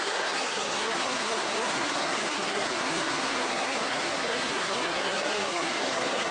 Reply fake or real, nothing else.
fake